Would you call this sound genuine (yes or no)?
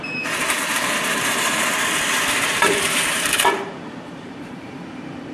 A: no